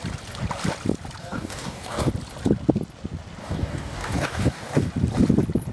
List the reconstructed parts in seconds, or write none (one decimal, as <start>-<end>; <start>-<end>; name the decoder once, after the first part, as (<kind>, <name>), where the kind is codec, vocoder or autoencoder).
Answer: 1.2-2.1 (codec, DAC); 3.4-4.9